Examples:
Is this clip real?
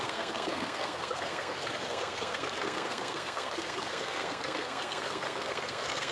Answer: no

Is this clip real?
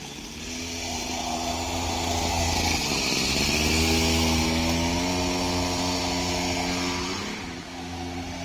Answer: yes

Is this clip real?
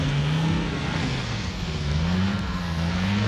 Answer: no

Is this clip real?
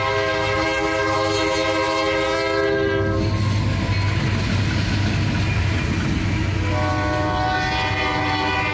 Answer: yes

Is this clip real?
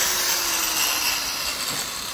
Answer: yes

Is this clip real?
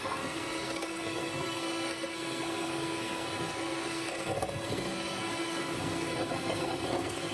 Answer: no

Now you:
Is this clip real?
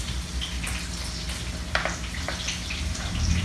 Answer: yes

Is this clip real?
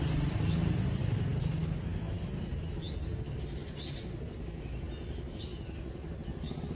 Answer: yes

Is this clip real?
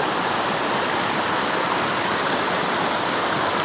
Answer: yes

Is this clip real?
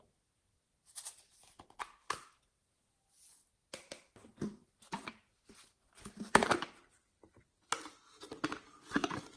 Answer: yes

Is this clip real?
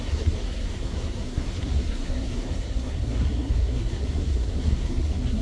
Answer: no